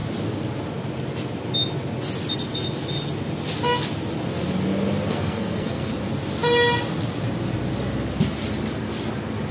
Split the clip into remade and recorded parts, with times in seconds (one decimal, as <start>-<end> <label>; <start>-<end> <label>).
0.0-5.1 recorded; 5.1-5.9 remade; 5.9-9.5 recorded